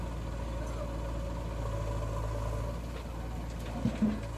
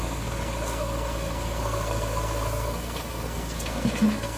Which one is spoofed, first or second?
second